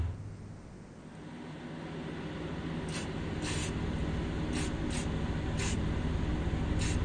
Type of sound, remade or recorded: recorded